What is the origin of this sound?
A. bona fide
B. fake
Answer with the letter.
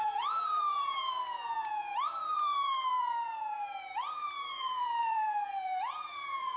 B